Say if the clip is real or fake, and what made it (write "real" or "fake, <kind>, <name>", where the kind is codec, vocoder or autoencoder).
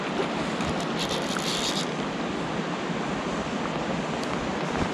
real